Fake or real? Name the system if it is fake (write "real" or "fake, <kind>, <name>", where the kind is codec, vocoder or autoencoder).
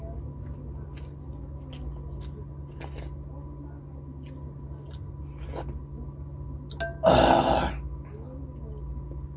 real